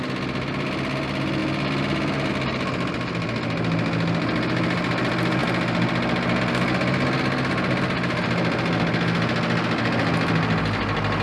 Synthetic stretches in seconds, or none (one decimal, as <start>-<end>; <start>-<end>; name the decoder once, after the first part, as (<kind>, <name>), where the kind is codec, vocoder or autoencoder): none